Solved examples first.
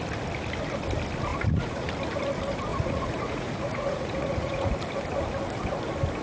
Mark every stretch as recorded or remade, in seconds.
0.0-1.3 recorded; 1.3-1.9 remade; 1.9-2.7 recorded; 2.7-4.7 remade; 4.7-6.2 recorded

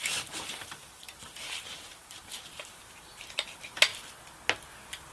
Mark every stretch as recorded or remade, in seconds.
0.0-3.9 remade; 3.9-5.1 recorded